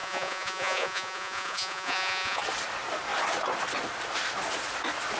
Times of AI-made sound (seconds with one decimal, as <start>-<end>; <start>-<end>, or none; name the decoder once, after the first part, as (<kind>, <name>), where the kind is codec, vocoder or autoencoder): 0.0-2.4 (vocoder, Vocos)